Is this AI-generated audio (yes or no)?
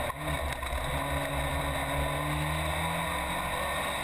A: no